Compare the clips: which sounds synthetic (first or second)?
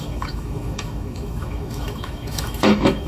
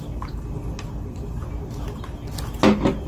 first